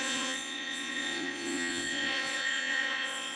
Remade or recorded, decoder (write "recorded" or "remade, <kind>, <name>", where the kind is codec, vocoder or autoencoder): remade, vocoder, Vocos